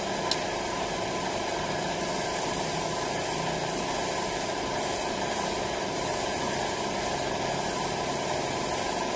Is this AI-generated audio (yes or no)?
no